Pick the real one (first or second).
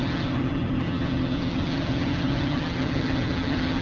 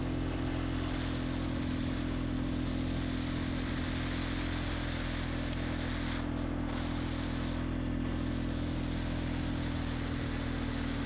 second